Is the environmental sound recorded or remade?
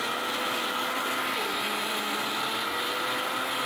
recorded